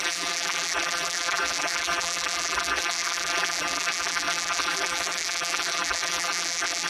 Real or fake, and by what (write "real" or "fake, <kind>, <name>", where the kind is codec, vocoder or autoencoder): fake, vocoder, BigVGAN v2